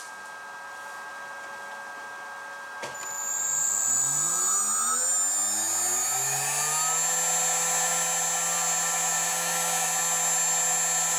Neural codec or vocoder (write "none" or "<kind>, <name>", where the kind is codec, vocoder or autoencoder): none